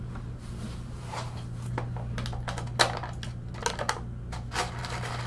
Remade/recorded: recorded